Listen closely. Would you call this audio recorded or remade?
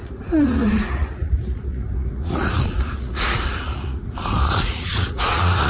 remade